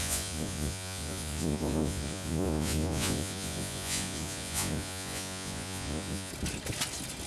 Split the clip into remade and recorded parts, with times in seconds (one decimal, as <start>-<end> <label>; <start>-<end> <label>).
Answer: 0.0-6.3 remade; 6.3-7.3 recorded